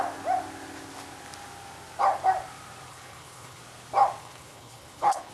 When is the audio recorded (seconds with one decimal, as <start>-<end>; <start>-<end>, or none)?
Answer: 0.0-2.9; 3.6-4.2